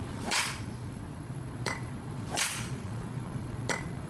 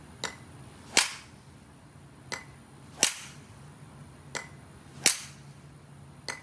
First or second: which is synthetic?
first